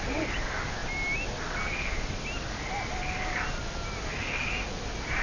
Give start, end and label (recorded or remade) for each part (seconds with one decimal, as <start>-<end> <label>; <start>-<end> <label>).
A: 0.0-5.2 recorded